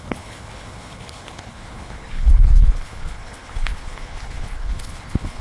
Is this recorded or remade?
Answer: remade